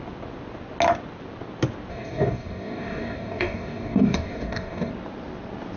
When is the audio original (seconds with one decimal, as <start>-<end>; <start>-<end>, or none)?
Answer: 0.0-1.9; 4.9-5.8